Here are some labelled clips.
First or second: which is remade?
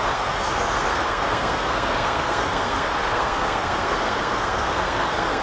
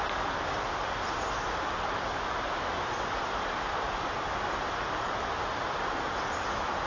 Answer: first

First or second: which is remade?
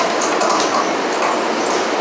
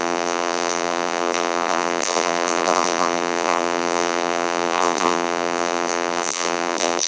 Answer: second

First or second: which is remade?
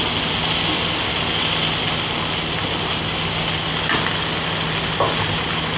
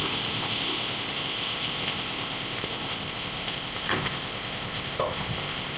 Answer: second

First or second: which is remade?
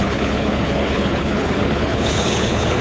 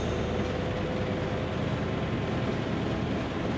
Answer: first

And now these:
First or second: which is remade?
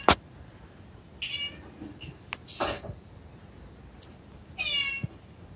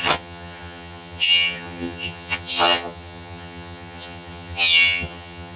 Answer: second